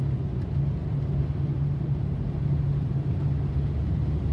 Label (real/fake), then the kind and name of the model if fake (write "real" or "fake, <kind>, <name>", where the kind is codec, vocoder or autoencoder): real